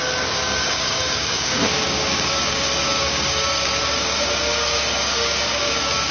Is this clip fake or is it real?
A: fake